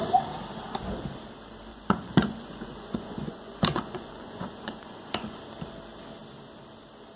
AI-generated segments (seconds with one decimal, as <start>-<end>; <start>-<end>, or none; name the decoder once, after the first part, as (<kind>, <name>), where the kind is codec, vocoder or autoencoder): 1.7-5.4 (vocoder, Vocos)